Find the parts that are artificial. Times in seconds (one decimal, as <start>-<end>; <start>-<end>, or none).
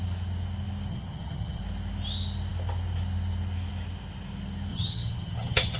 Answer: 0.9-1.6; 4.7-5.8